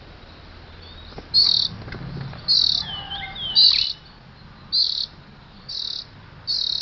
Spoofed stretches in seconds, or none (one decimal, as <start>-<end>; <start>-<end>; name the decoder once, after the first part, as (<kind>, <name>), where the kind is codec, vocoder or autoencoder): none